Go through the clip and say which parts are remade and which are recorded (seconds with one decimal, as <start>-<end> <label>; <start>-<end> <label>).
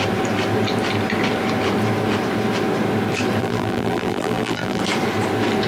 0.0-3.4 recorded; 3.4-4.8 remade; 4.8-5.7 recorded